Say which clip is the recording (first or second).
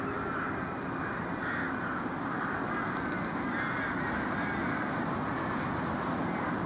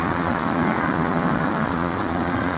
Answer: first